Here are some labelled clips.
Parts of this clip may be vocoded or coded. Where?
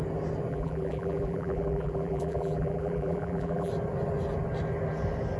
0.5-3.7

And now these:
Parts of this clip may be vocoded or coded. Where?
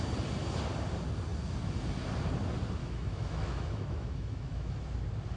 2.8-4.8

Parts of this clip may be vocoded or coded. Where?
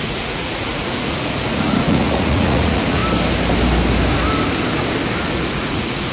0.0-3.0; 5.3-6.1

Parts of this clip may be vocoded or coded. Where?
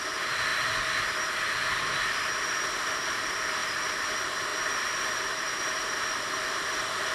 none